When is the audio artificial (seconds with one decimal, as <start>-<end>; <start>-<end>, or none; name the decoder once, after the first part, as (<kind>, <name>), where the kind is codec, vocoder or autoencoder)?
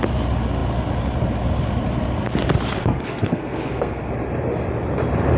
2.8-4.1 (codec, SNAC)